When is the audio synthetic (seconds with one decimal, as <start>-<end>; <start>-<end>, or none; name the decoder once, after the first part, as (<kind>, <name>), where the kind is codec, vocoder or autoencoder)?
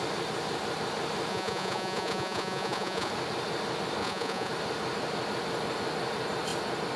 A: 1.3-3.1 (vocoder, Vocos); 4.0-4.5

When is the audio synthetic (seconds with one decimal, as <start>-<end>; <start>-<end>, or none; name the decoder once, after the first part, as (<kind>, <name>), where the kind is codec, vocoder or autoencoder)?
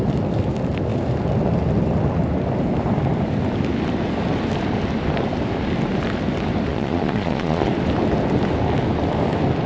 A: 6.7-7.7 (vocoder, Vocos)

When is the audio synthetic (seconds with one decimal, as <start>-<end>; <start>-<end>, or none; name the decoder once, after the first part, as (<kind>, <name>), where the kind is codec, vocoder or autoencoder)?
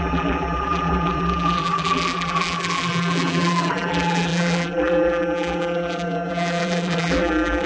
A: 0.0-7.7 (vocoder, BigVGAN v2)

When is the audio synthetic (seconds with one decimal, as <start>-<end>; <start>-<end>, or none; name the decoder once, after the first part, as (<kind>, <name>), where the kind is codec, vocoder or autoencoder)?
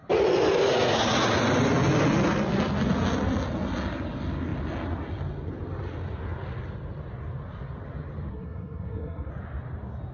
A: 8.3-9.3 (codec, SNAC)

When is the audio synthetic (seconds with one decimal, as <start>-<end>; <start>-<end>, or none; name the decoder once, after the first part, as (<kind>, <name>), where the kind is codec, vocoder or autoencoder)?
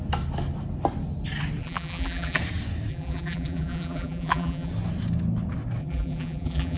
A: 1.6-2.4 (vocoder, BigVGAN v2); 2.9-4.7; 5.8-6.8